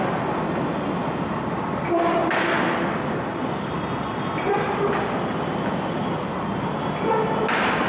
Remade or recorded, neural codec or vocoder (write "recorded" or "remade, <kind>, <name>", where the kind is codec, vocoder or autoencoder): recorded